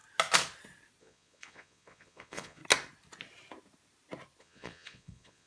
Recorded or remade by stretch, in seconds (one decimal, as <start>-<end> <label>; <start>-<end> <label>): 0.0-1.0 recorded; 1.0-2.6 remade; 2.6-4.4 recorded; 4.4-5.5 remade